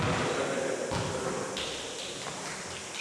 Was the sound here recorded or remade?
recorded